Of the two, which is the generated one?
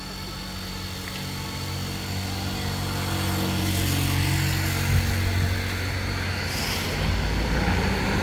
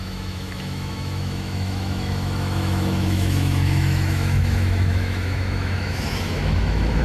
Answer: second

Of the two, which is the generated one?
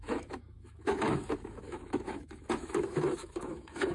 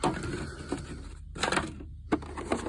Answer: first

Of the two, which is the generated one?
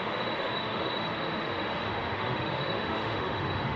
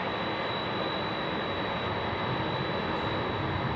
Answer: first